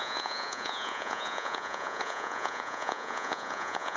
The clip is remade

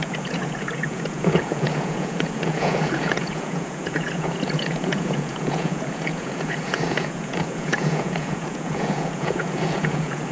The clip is remade